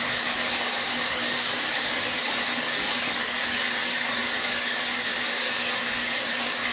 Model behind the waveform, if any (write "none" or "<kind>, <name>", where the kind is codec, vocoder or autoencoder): codec, DAC